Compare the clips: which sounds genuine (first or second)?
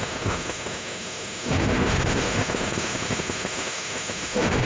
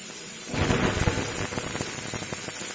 second